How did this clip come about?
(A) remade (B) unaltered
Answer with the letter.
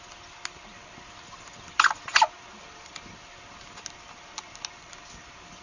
B